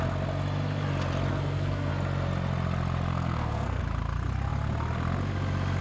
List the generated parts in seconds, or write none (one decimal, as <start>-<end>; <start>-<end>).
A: 1.3-1.9; 3.1-3.8

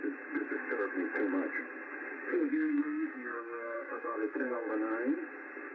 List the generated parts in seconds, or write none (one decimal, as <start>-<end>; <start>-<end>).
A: 2.3-4.7

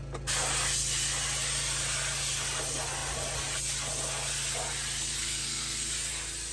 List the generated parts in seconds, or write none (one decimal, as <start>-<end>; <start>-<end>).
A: 5.2-5.9

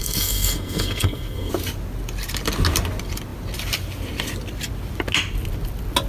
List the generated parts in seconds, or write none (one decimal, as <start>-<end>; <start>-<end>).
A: 0.0-1.5

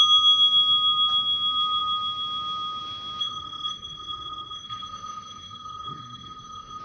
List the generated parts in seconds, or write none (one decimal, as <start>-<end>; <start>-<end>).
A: 3.2-6.8